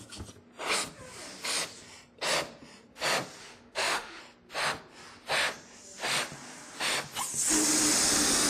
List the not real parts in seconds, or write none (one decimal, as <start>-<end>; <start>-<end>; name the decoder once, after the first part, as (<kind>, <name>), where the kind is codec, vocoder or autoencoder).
3.4-4.2 (autoencoder, DAC-VAE)